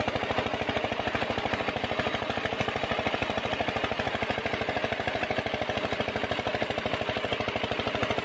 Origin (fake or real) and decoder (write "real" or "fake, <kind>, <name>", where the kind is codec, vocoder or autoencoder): real